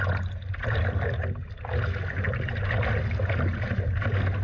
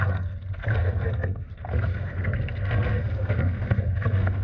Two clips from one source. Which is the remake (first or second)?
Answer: second